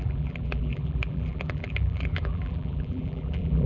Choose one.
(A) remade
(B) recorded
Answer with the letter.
A